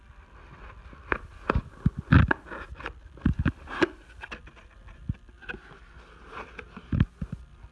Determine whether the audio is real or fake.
real